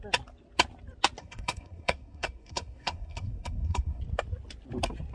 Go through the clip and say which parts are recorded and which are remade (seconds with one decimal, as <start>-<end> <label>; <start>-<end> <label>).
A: 0.0-1.2 recorded; 1.2-4.0 remade; 4.0-5.1 recorded